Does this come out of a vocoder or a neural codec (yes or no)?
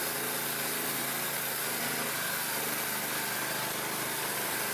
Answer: no